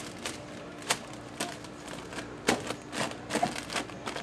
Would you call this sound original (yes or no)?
yes